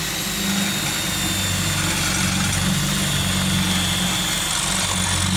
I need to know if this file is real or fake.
real